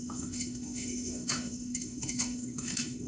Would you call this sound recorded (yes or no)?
no